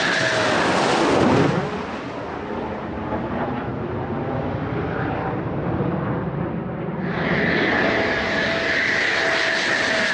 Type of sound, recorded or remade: recorded